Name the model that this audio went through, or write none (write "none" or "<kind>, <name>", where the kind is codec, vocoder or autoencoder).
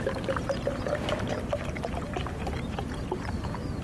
vocoder, BigVGAN v2